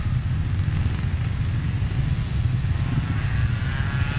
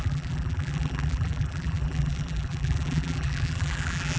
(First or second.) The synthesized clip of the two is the second